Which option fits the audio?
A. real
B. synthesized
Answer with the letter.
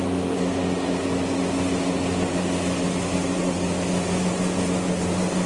A